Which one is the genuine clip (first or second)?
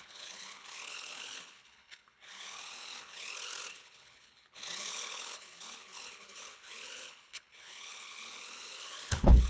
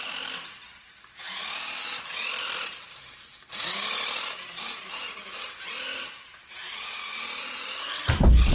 second